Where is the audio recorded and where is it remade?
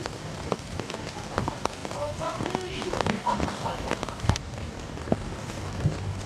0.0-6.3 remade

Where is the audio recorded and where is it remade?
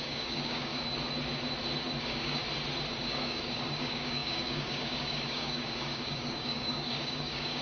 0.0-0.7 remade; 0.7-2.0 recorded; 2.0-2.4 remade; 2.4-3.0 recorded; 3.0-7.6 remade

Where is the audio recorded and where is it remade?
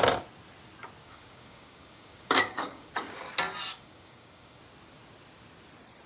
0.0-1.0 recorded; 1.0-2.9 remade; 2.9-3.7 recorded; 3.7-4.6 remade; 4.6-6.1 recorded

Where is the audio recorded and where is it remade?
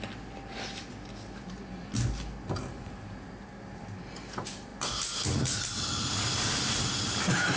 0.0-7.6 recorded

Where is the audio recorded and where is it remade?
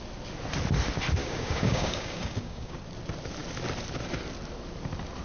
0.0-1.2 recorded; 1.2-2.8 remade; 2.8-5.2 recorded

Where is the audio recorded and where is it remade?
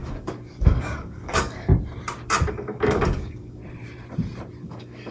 0.0-1.7 remade; 1.7-2.5 recorded; 2.5-3.6 remade; 3.6-4.6 recorded; 4.6-5.1 remade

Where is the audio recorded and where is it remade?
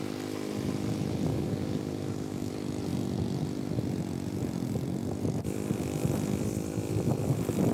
0.0-1.3 recorded; 1.3-2.5 remade; 2.5-7.7 recorded